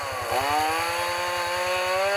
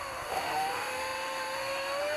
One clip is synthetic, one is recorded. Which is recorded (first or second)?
first